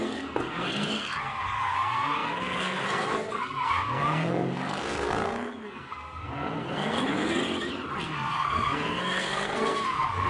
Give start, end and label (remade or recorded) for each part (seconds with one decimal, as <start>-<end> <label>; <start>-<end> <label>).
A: 0.0-7.4 remade; 7.4-8.0 recorded; 8.0-10.3 remade